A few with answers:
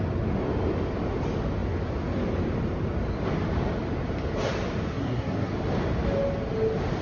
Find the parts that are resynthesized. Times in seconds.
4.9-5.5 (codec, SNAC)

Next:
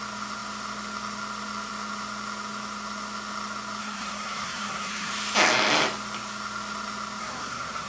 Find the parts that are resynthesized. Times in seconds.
3.8-5.1 (codec, SNAC); 7.2-7.9

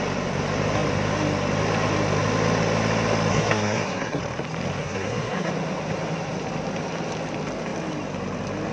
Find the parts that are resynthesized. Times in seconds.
3.3-4.2 (codec, SNAC); 4.8-5.5

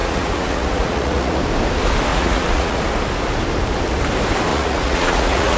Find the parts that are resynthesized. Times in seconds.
0.0-1.4 (vocoder, Vocos); 2.1-2.8; 4.5-5.6

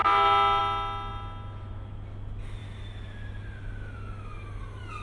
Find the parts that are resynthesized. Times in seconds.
none

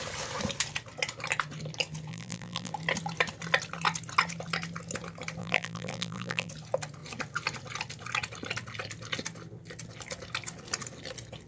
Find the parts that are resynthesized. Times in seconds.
2.1-2.7 (vocoder, BigVGAN v2); 5.4-6.5

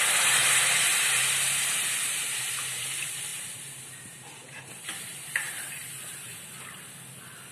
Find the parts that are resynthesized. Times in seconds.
0.0-6.3 (vocoder, BigVGAN v2)

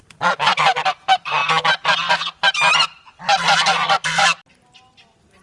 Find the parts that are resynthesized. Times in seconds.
0.0-1.4 (vocoder, BigVGAN v2); 2.5-4.2